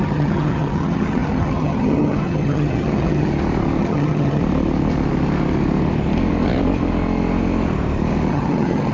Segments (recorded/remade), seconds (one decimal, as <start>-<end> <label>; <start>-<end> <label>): 0.0-3.3 remade; 3.3-3.8 recorded; 3.8-4.4 remade; 4.4-8.3 recorded; 8.3-8.9 remade